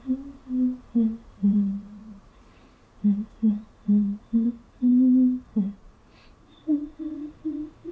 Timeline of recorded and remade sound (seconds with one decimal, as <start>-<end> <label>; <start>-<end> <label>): 0.0-1.2 recorded; 1.2-4.9 remade; 4.9-5.8 recorded; 5.8-7.9 remade